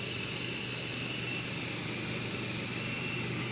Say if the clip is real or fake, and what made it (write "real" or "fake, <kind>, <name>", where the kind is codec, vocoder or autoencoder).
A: real